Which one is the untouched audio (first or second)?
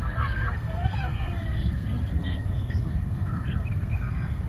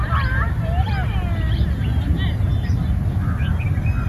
second